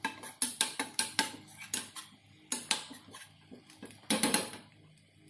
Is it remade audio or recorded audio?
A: recorded